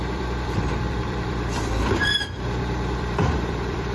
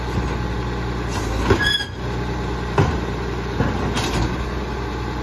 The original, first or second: second